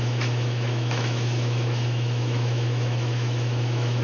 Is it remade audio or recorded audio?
remade